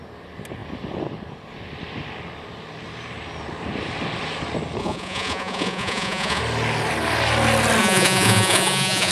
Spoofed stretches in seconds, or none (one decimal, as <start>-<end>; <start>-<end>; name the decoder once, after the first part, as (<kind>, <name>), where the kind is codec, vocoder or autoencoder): 4.8-6.4 (vocoder, Vocos); 7.8-9.1